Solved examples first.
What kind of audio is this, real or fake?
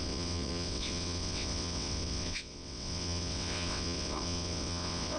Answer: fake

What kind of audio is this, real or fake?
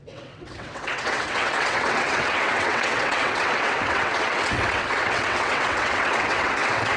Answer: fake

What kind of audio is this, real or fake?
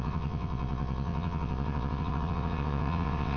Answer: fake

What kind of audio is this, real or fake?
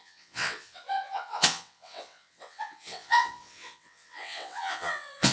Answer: fake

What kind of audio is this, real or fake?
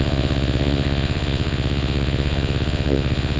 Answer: fake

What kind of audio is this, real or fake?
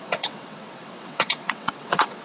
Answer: fake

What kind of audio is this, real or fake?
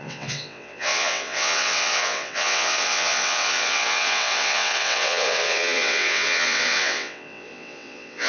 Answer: fake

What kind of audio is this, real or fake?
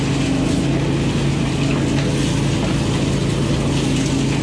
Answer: real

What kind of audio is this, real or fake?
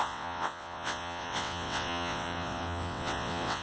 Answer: fake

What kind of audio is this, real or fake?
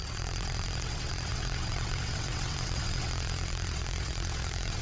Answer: fake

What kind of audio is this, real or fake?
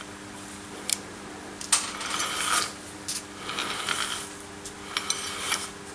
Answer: real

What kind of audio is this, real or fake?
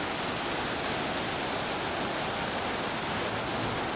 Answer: real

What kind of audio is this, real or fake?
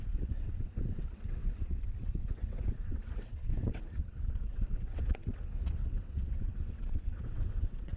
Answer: fake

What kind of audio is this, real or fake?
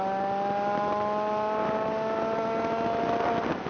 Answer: real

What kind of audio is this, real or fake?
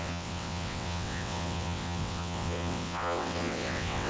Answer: fake